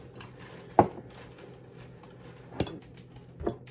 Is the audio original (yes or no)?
yes